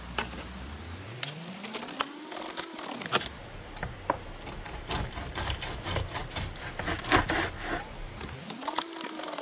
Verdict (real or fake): real